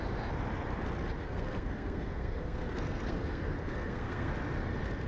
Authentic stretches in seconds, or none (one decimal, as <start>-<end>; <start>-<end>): 0.0-1.2; 4.3-5.1